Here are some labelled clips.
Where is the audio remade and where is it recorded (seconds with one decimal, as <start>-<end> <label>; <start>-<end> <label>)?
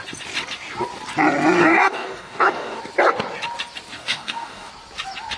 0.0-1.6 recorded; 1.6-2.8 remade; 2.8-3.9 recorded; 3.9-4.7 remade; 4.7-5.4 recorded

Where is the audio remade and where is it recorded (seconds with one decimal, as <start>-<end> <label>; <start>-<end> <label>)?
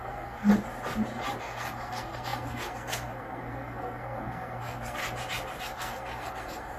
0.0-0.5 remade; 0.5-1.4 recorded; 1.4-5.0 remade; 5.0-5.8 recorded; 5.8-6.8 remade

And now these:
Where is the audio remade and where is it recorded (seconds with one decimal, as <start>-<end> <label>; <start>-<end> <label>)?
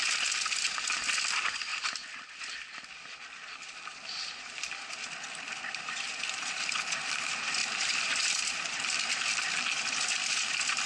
0.0-1.7 recorded; 1.7-6.6 remade; 6.6-7.6 recorded; 7.6-9.5 remade; 9.5-10.9 recorded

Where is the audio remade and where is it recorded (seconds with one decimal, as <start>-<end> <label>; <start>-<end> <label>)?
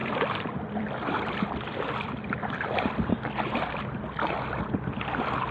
0.0-3.1 remade; 3.1-5.5 recorded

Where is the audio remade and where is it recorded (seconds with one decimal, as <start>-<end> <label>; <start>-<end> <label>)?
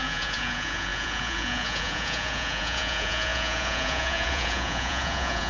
0.0-5.5 remade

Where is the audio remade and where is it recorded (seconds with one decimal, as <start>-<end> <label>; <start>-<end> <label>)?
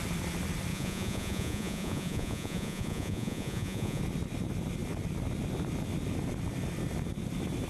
0.0-0.7 recorded; 0.7-4.0 remade; 4.0-7.7 recorded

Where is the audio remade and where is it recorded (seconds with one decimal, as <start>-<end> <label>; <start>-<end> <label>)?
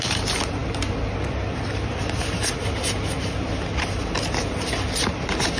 0.0-5.6 recorded